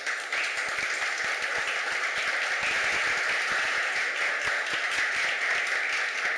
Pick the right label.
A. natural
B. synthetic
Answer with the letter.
A